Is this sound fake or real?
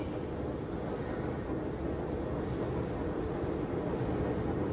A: real